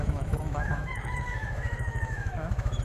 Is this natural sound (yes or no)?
no